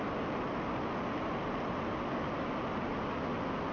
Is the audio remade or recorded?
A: recorded